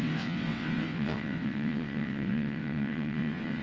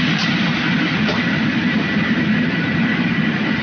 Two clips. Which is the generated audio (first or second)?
first